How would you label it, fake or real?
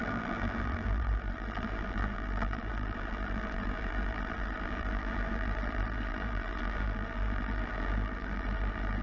fake